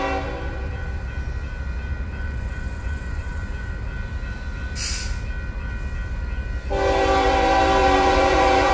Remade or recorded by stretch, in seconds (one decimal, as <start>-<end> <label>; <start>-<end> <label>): 0.0-2.2 recorded; 2.2-3.7 remade; 3.7-7.8 recorded; 7.8-8.7 remade